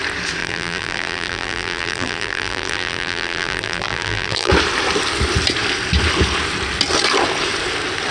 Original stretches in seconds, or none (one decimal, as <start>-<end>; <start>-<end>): 0.0-0.4; 4.5-8.1